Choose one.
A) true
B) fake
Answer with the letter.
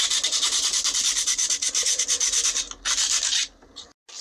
A